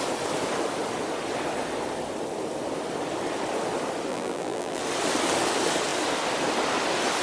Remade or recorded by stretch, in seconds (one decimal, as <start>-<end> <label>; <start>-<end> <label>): 0.0-4.1 recorded; 4.1-4.8 remade; 4.8-7.2 recorded